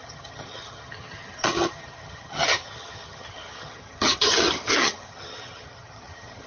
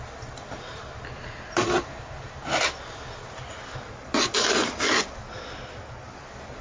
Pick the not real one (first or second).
first